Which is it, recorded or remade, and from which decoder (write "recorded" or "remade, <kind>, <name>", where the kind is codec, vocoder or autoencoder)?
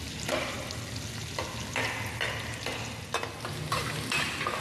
recorded